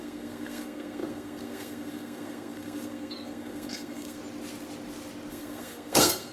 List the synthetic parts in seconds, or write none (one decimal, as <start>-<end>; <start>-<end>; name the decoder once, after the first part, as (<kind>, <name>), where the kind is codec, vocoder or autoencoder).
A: 0.0-4.2 (codec, SNAC); 5.3-6.3